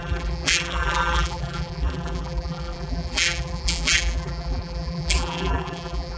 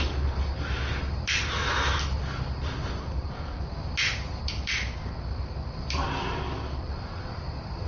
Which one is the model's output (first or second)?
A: first